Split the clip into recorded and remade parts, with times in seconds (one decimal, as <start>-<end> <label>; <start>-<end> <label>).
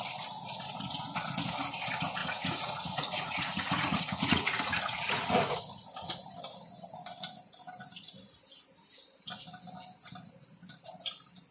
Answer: 0.0-2.2 recorded; 2.2-5.6 remade; 5.6-11.5 recorded